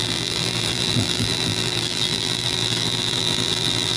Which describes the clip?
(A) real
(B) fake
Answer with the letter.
B